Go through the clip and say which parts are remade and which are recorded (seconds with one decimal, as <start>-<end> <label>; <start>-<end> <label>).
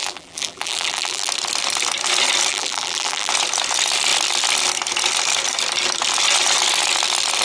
0.0-1.3 remade; 1.3-2.5 recorded; 2.5-3.3 remade; 3.3-7.4 recorded